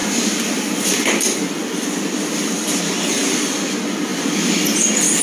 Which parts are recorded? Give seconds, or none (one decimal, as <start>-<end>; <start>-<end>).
2.8-5.2